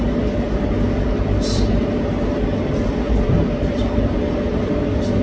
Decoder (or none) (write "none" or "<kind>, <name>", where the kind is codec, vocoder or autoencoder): none